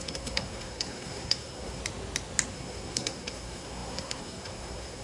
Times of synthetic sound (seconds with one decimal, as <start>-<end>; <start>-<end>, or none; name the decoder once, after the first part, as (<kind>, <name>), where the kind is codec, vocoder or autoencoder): 0.0-1.8 (codec, SNAC); 2.5-5.0